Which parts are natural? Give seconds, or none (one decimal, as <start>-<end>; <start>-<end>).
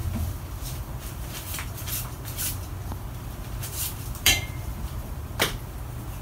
1.9-2.8; 5.6-6.2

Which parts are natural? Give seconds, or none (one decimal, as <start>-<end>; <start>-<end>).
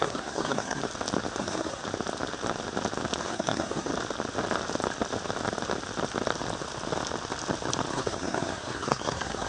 0.8-1.4; 1.8-3.2; 3.9-7.9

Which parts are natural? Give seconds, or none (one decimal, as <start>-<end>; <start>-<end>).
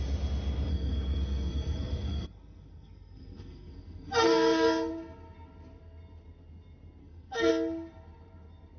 0.0-0.7; 4.9-7.0; 7.5-8.8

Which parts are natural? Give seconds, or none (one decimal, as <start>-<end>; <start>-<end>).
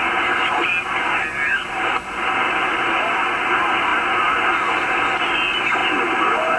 0.0-6.6